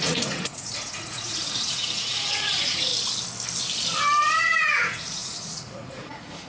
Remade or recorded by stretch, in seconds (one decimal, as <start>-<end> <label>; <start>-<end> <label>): 0.0-2.9 remade; 2.9-4.4 recorded; 4.4-6.5 remade